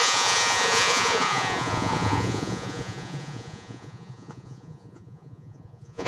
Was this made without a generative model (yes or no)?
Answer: no